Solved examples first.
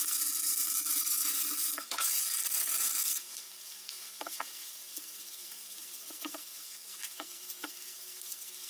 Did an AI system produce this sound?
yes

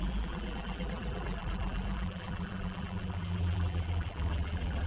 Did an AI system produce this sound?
yes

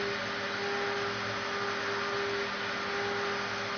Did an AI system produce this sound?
no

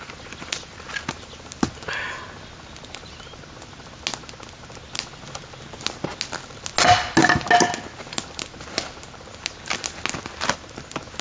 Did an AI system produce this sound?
no